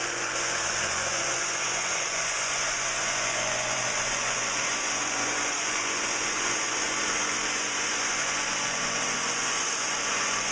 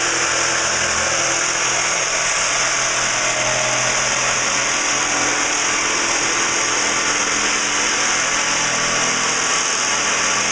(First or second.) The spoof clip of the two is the first